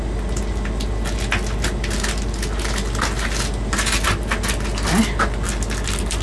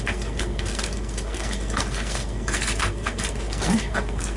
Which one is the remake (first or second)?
second